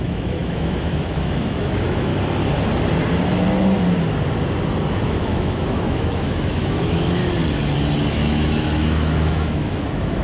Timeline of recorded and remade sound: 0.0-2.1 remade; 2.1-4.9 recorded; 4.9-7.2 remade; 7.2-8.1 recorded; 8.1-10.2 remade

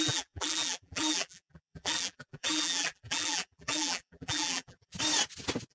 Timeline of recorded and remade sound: 0.0-4.9 remade; 4.9-5.7 recorded

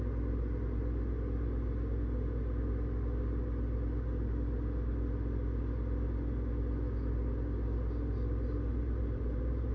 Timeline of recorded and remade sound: 0.0-8.7 recorded; 8.7-9.7 remade